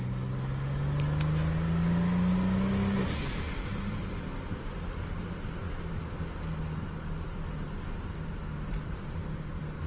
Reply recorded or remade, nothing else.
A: recorded